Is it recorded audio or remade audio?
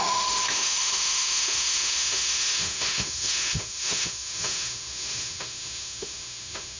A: remade